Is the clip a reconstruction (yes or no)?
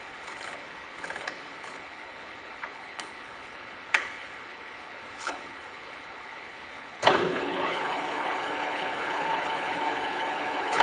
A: yes